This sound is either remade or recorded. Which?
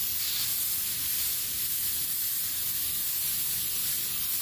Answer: recorded